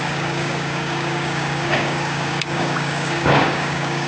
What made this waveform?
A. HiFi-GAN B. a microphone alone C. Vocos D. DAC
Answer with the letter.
D